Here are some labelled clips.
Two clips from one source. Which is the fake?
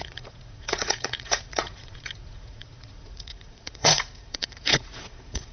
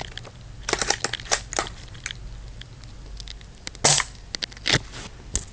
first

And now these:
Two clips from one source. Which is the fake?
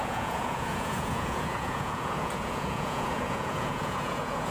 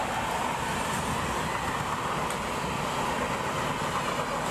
first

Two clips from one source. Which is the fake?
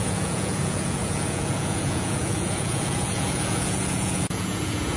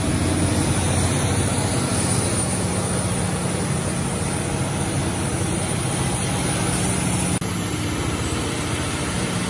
first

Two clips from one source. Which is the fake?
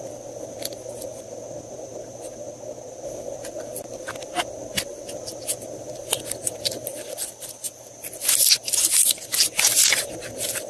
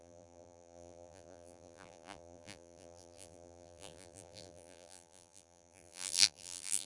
second